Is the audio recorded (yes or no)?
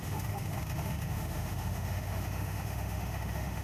no